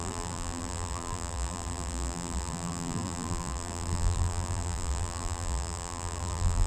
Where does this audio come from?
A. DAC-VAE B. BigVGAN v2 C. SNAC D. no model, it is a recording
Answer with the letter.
B